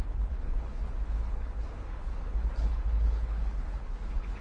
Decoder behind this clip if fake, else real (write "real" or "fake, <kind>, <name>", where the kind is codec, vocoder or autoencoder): fake, codec, HILCodec